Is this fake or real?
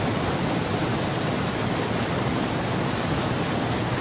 real